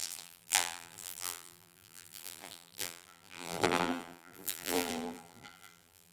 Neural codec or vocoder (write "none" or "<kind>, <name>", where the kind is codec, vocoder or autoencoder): vocoder, BigVGAN v2